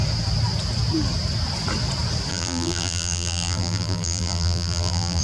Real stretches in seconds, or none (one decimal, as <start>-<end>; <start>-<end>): 0.0-2.3